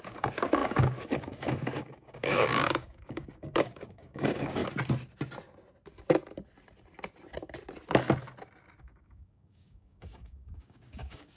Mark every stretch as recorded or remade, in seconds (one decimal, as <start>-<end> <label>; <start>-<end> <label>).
0.0-4.6 remade; 4.6-8.8 recorded; 8.8-11.4 remade